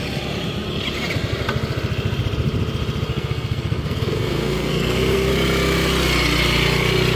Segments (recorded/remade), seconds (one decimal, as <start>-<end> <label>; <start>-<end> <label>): 0.0-3.1 recorded; 3.1-5.3 remade; 5.3-7.2 recorded